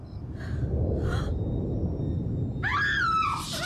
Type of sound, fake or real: real